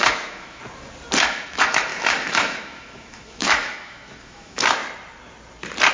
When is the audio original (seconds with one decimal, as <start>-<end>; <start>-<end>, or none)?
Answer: 0.6-1.2; 4.8-5.9